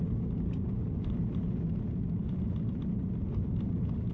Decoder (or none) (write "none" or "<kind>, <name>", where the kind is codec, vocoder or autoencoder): none